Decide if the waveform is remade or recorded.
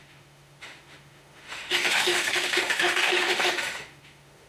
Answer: remade